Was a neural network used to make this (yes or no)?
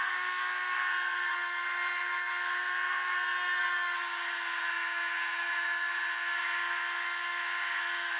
yes